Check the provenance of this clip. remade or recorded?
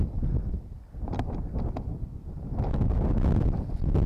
recorded